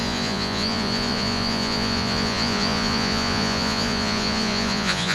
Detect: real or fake fake